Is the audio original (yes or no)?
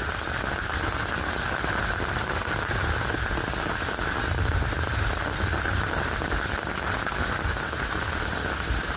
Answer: yes